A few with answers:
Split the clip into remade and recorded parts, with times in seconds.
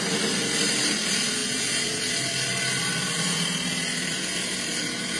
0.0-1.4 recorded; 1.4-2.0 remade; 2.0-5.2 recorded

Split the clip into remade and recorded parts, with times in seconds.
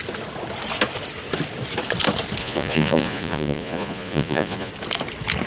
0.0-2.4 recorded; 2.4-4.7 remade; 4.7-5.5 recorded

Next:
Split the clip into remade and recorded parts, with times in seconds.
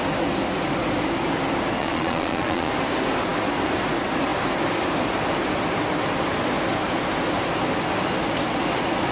0.0-1.8 recorded; 1.8-2.7 remade; 2.7-9.1 recorded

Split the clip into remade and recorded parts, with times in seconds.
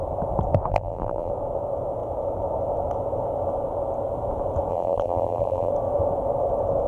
0.0-0.7 recorded; 0.7-1.3 remade; 1.3-4.7 recorded; 4.7-5.7 remade; 5.7-6.9 recorded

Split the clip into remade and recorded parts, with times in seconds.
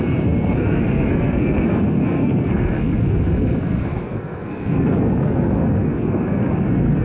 0.0-7.0 remade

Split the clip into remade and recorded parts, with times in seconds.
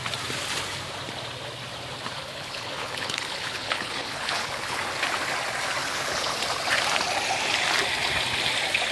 0.0-2.2 recorded; 2.2-4.8 remade; 4.8-5.8 recorded; 5.8-6.4 remade; 6.4-8.9 recorded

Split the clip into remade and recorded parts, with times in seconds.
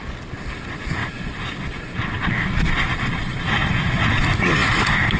0.0-1.0 recorded; 1.0-4.1 remade; 4.1-5.2 recorded